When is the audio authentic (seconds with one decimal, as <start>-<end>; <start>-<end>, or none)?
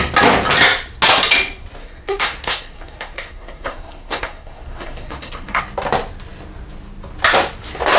0.0-1.8; 5.6-8.0